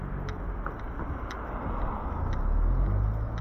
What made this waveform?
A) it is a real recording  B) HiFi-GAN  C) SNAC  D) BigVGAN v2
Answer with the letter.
A